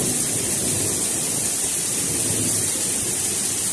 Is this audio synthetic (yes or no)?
no